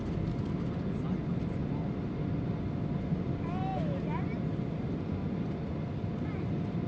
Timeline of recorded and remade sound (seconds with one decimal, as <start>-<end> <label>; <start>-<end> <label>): 0.0-6.9 recorded